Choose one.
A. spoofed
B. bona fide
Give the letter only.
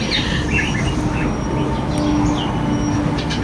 B